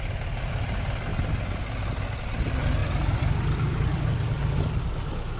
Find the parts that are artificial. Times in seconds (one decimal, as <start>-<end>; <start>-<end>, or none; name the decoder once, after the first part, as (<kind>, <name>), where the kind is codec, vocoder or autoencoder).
2.8-4.1 (vocoder, BigVGAN v2)